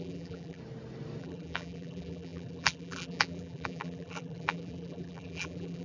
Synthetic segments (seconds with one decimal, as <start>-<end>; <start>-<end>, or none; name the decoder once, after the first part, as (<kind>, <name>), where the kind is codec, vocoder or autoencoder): 0.0-0.6 (vocoder, BigVGAN v2); 1.2-5.8